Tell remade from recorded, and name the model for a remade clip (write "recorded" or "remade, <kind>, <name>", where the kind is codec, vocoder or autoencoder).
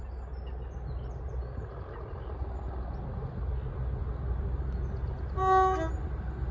recorded